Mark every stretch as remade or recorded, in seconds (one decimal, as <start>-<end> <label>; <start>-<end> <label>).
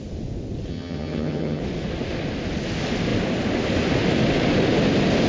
0.0-0.7 recorded; 0.7-1.6 remade; 1.6-5.3 recorded